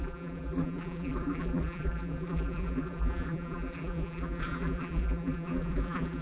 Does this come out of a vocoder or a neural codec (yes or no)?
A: yes